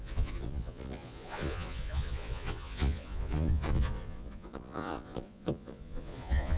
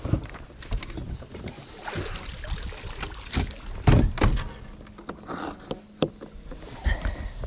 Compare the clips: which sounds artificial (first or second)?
first